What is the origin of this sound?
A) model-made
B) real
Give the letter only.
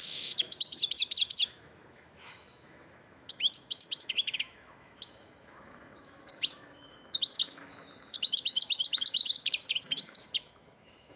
A